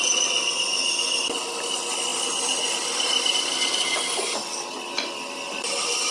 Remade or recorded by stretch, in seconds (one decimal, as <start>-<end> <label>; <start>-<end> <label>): 0.0-6.1 recorded